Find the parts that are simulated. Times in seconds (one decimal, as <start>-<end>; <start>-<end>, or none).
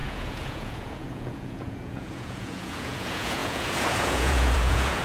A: 0.0-5.0